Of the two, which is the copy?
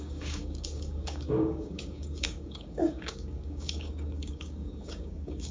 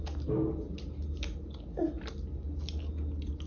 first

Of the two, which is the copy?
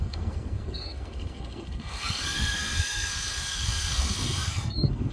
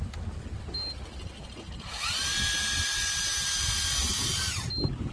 first